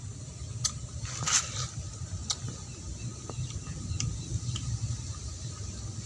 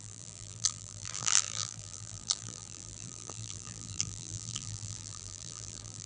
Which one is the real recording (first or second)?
first